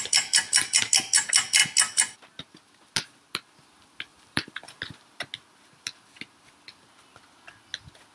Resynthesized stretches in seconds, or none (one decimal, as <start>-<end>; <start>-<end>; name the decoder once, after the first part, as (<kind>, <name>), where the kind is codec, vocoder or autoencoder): 4.1-4.8 (vocoder, BigVGAN v2)